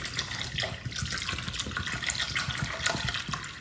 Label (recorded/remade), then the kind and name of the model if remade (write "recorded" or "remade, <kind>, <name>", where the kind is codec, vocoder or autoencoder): recorded